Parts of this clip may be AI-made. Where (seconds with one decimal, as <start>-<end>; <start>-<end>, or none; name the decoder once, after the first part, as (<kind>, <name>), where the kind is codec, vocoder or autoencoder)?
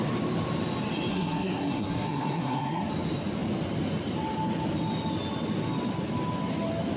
1.1-2.9 (codec, SNAC)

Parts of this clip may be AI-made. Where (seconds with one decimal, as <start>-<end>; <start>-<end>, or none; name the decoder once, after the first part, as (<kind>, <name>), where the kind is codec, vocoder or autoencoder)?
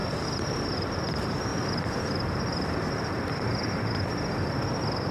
0.0-1.0 (vocoder, BigVGAN v2); 1.5-4.6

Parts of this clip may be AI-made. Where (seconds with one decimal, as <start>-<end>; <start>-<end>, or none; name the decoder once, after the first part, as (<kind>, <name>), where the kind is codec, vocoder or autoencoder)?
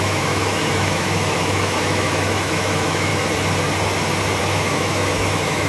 0.0-3.1 (autoencoder, DAC-VAE); 4.4-5.7